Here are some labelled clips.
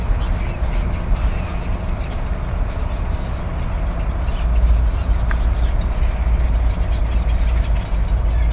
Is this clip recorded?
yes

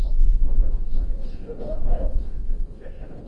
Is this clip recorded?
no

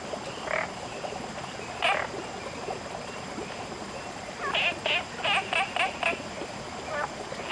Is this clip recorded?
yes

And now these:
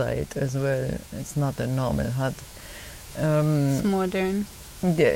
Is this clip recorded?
no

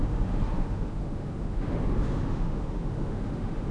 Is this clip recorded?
no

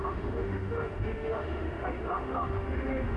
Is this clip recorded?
no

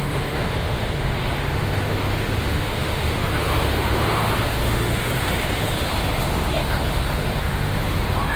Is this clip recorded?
no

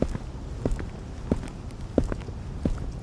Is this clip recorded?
yes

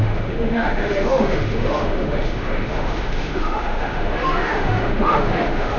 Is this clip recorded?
no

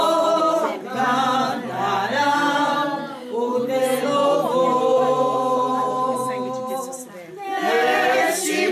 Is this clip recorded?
yes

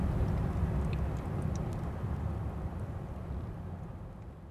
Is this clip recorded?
yes